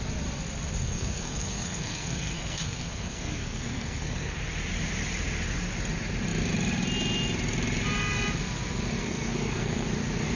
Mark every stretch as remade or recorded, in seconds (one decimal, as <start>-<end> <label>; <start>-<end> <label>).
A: 0.0-0.8 recorded; 0.8-4.4 remade; 4.4-9.0 recorded; 9.0-9.9 remade; 9.9-10.4 recorded